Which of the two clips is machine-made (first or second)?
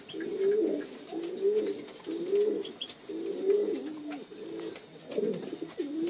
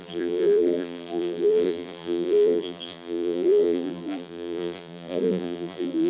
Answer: second